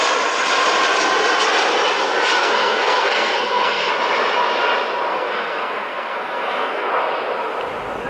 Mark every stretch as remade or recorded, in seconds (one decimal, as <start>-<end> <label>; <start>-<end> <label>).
0.0-2.4 recorded; 2.4-3.9 remade; 3.9-5.1 recorded; 5.1-6.9 remade; 6.9-8.1 recorded